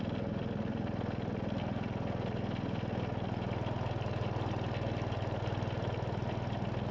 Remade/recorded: recorded